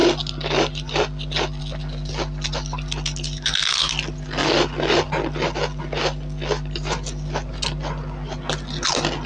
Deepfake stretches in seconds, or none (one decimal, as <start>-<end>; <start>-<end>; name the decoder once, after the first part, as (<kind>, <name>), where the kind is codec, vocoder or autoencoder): none